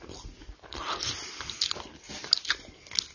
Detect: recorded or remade recorded